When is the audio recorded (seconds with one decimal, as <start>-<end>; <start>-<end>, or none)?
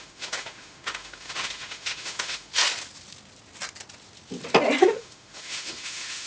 2.5-4.8